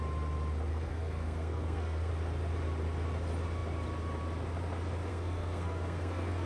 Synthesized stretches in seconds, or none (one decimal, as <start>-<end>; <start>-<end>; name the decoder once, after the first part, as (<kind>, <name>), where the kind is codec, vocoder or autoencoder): 0.7-2.1 (codec, SNAC); 5.1-6.5